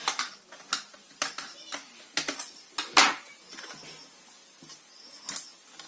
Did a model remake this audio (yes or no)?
no